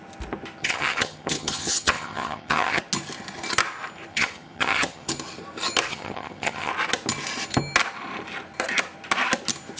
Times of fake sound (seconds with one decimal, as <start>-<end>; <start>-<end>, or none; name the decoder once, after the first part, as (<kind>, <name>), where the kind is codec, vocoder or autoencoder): 0.6-2.8 (vocoder, HiFi-GAN); 4.1-5.1; 5.9-6.7